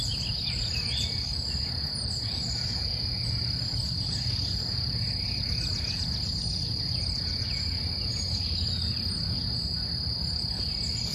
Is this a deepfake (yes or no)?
no